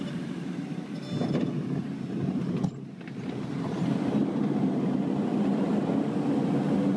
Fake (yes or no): no